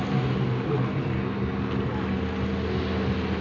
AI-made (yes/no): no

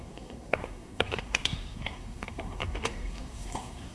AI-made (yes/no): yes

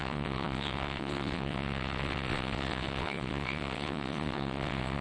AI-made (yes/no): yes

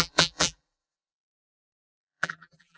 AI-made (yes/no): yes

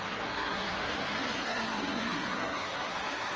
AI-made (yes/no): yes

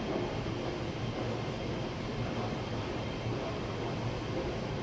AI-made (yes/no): no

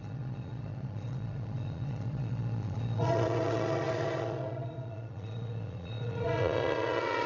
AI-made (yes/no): yes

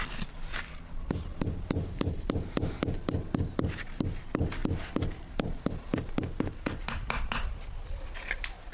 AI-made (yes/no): no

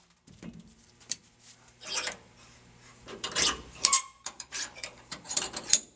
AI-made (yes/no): yes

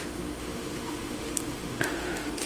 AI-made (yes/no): yes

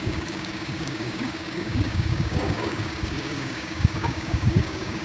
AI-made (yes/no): yes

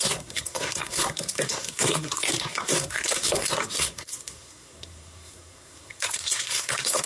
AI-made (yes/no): yes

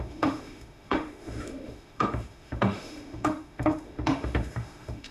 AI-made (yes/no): yes